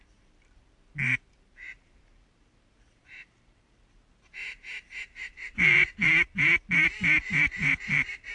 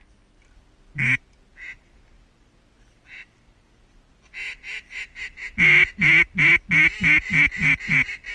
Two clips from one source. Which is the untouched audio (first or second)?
second